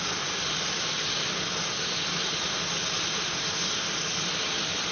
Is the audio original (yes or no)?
yes